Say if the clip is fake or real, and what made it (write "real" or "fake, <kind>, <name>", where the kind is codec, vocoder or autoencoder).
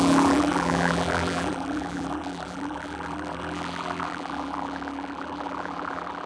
fake, vocoder, BigVGAN v2